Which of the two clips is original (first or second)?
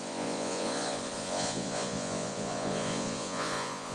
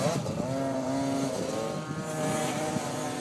second